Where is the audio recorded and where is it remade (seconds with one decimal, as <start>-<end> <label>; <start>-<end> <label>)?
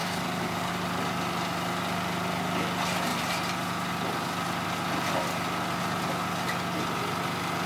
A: 0.0-0.7 remade; 0.7-7.7 recorded